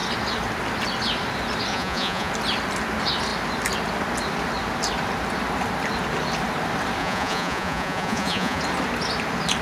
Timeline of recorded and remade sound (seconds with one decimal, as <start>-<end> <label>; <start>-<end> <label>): 0.0-1.7 recorded; 1.7-2.3 remade; 2.3-7.0 recorded; 7.0-8.6 remade; 8.6-9.6 recorded